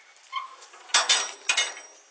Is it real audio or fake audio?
real